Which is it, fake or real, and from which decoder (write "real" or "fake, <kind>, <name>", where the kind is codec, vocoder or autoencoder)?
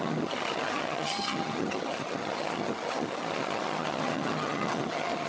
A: fake, vocoder, HiFi-GAN